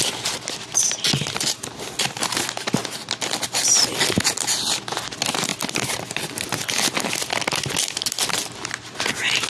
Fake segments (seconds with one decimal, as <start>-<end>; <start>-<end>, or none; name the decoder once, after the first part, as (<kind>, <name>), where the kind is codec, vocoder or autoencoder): none

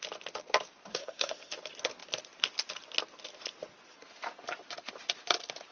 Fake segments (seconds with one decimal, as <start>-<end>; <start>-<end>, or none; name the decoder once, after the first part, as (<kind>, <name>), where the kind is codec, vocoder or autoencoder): 0.9-1.5 (codec, SNAC)

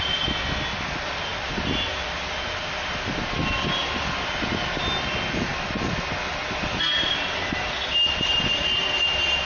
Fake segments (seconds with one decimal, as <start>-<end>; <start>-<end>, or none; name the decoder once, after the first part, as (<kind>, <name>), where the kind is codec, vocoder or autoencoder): none

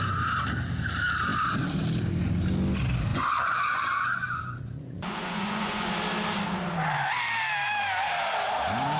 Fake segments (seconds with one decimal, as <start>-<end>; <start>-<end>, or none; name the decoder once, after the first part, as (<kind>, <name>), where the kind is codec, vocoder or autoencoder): 3.1-5.9 (vocoder, Vocos)